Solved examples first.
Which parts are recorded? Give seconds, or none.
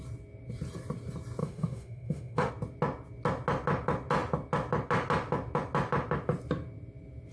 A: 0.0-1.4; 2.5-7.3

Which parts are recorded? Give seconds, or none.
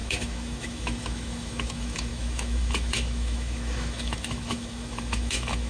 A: none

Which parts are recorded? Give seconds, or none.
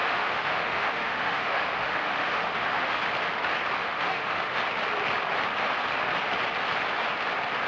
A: 3.0-3.8; 4.6-7.7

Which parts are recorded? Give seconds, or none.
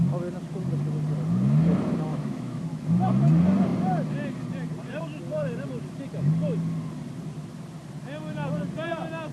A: 0.0-2.1; 2.6-9.3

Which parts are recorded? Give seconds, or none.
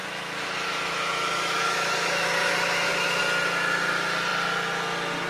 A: 3.2-5.3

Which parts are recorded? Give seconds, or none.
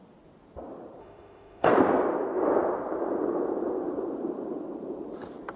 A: 0.0-1.0; 1.7-5.6